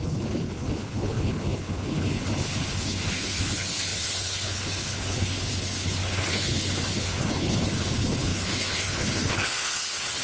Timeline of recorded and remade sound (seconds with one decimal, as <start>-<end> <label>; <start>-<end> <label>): 0.0-10.2 remade